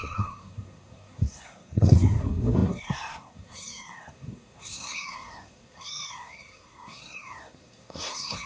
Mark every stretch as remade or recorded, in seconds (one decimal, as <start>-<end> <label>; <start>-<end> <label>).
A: 0.0-8.5 remade